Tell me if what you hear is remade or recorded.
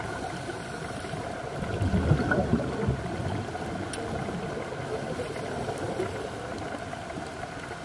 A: recorded